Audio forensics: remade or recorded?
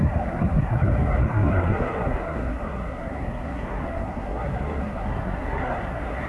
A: remade